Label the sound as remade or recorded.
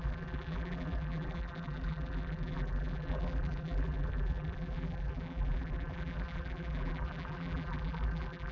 remade